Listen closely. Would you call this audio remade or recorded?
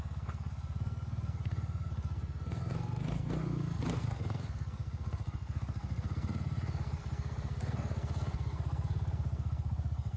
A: remade